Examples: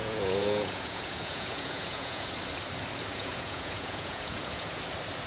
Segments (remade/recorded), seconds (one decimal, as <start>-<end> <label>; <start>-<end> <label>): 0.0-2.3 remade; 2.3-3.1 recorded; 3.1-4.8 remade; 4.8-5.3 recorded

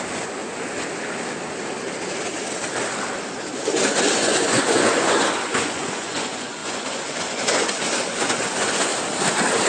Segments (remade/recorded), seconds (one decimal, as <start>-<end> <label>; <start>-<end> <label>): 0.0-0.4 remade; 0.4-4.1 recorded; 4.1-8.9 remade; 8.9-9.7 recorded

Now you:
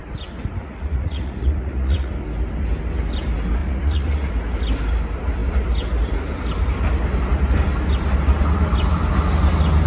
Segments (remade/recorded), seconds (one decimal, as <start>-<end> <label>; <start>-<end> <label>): 0.0-0.6 recorded; 0.6-2.1 remade; 2.1-3.6 recorded; 3.6-4.3 remade; 4.3-9.9 recorded